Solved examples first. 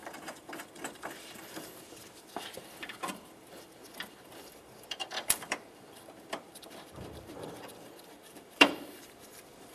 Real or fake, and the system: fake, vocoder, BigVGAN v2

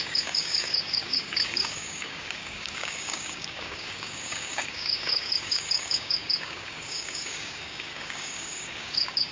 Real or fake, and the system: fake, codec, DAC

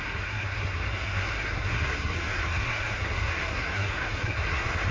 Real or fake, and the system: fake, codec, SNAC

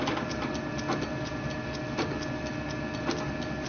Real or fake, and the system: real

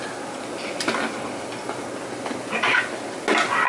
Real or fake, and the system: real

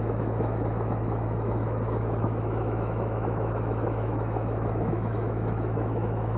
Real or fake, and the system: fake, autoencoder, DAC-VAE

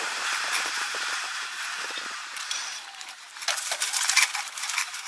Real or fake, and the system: fake, vocoder, BigVGAN v2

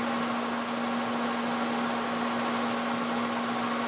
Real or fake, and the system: real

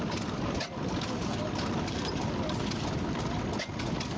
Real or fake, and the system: real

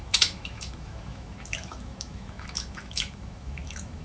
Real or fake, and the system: fake, autoencoder, DAC-VAE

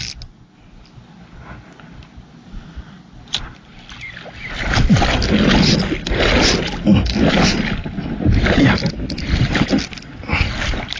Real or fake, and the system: real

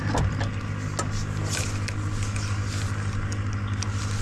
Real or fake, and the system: real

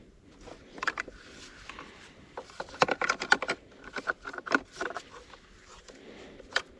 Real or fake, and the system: real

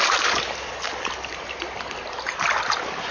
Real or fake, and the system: real